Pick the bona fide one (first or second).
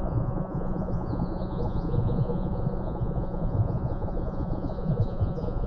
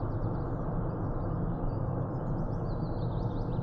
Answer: second